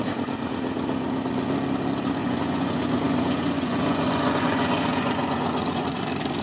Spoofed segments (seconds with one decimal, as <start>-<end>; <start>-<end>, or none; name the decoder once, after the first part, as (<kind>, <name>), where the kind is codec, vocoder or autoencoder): 2.2-6.0 (vocoder, Vocos)